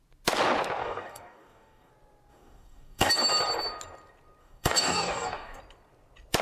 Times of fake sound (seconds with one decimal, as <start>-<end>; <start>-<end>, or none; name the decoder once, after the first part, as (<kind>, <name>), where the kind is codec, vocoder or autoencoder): 0.8-1.9 (codec, DAC); 2.3-3.1; 4.4-5.6